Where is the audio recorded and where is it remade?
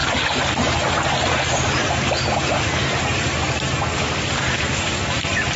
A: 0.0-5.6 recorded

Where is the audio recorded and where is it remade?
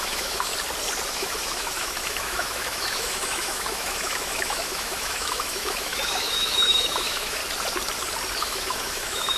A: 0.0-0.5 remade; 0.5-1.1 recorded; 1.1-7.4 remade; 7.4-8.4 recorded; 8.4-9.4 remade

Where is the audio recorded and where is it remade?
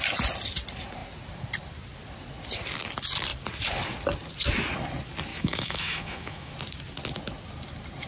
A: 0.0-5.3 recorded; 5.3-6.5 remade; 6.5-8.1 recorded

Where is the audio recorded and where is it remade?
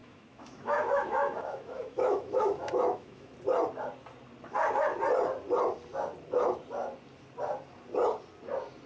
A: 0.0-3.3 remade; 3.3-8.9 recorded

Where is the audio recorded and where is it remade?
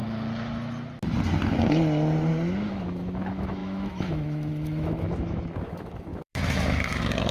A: 0.0-2.7 recorded; 2.7-7.3 remade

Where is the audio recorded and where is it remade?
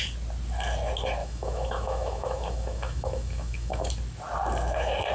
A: 0.0-1.2 recorded; 1.2-3.9 remade; 3.9-5.1 recorded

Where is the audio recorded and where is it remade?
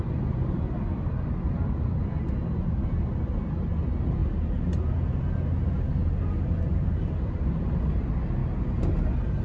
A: 0.0-9.4 recorded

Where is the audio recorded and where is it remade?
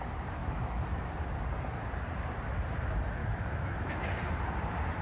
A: 0.0-0.4 recorded; 0.4-1.1 remade; 1.1-3.2 recorded; 3.2-4.1 remade; 4.1-5.0 recorded